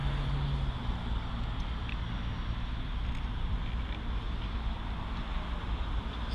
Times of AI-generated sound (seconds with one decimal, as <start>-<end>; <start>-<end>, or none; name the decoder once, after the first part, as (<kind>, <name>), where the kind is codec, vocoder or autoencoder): none